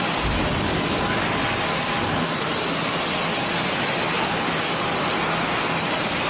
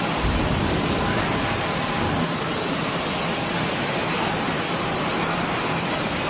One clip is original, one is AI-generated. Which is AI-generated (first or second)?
second